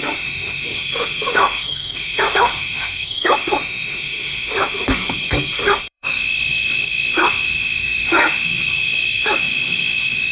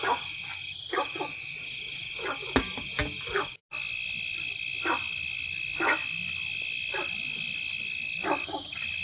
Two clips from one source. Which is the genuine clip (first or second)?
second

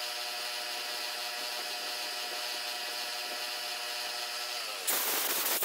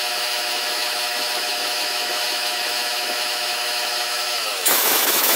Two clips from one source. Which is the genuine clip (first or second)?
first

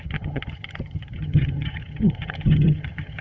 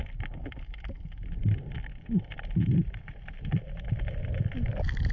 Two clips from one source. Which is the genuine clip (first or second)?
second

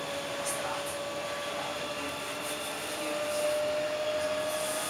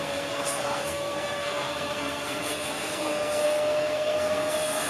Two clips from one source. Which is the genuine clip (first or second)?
first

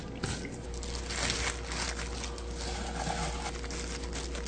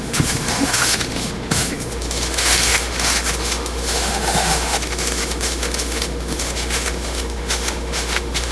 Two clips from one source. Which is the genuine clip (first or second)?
first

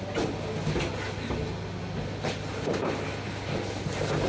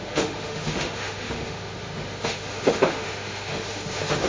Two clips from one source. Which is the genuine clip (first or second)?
first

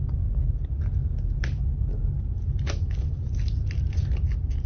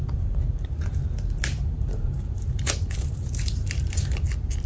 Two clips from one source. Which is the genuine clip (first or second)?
first